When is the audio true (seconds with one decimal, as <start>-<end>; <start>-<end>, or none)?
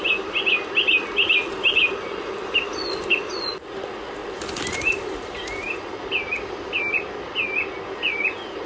0.0-1.4; 2.3-4.2; 4.8-8.7